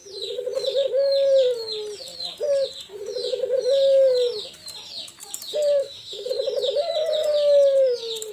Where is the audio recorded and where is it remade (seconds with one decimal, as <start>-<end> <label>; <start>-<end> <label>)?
0.0-5.8 recorded; 5.8-6.3 remade; 6.3-8.3 recorded